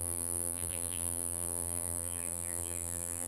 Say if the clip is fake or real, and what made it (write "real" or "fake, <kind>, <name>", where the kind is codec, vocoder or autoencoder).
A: fake, vocoder, BigVGAN v2